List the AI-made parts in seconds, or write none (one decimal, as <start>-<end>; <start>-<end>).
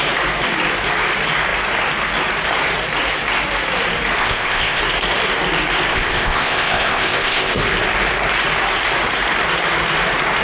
4.2-4.8; 5.9-7.6